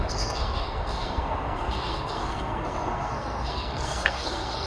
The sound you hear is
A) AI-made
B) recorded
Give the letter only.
A